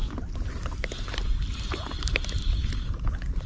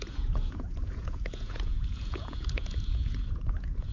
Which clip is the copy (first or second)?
second